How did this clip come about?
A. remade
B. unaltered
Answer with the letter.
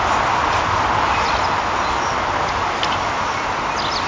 B